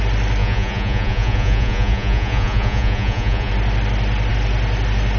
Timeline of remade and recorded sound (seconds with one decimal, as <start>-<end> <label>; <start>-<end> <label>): 0.0-0.4 recorded; 0.4-3.5 remade; 3.5-5.2 recorded